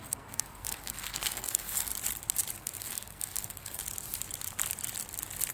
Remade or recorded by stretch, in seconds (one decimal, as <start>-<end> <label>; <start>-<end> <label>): 0.0-1.9 remade; 1.9-2.6 recorded; 2.6-3.8 remade; 3.8-5.5 recorded